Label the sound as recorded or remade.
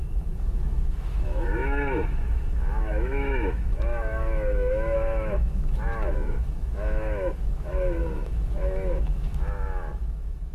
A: remade